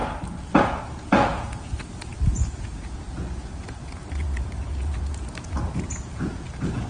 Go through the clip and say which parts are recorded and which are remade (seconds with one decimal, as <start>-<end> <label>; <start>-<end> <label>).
0.0-0.6 recorded; 0.6-6.9 remade